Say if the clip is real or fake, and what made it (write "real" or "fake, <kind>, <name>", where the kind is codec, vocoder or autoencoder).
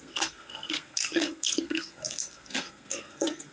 fake, codec, SNAC